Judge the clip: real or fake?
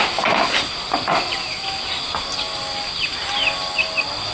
real